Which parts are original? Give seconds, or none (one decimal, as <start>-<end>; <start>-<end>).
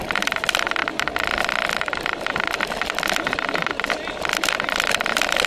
0.0-5.5